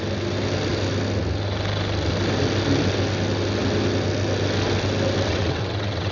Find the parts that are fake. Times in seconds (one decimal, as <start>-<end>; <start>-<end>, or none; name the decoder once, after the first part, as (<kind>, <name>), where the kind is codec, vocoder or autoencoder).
5.3-6.1 (vocoder, WaveNeXt)